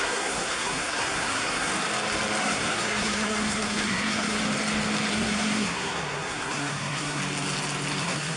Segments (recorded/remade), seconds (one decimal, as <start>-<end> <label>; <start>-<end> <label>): 0.0-1.7 remade; 1.7-2.4 recorded; 2.4-4.4 remade; 4.4-5.1 recorded; 5.1-7.2 remade; 7.2-8.0 recorded; 8.0-8.4 remade